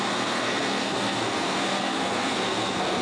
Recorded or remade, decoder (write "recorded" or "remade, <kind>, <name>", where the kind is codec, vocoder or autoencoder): remade, codec, SNAC